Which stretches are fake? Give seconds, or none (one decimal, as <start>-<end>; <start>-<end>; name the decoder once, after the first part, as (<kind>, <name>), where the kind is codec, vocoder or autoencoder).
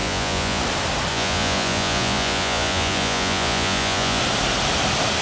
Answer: 0.0-0.6 (vocoder, Vocos); 1.1-4.2